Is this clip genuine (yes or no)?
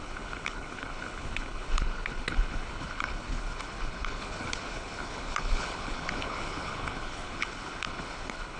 no